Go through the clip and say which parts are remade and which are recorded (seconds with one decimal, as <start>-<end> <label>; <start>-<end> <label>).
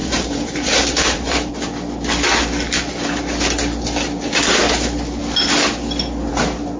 0.0-1.5 remade; 1.5-6.8 recorded